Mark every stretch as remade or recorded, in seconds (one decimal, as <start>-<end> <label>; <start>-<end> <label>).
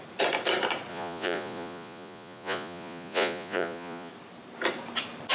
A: 0.0-0.9 recorded; 0.9-4.1 remade; 4.1-5.3 recorded